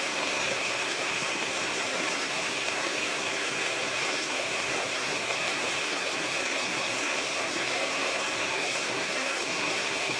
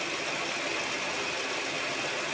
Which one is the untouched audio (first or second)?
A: second